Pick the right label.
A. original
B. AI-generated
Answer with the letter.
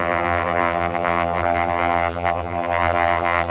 B